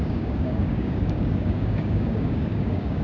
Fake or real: fake